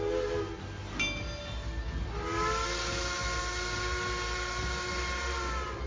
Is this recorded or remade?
recorded